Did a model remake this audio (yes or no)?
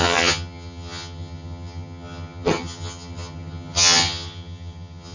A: yes